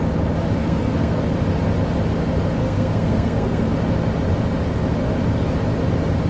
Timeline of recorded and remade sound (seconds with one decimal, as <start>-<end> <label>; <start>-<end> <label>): 0.0-0.6 recorded; 0.6-1.2 remade; 1.2-2.6 recorded; 2.6-3.7 remade; 3.7-6.3 recorded